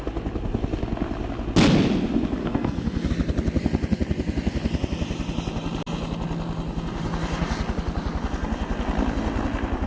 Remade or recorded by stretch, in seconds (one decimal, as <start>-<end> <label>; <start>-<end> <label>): 0.0-2.4 recorded; 2.4-3.1 remade; 3.1-9.9 recorded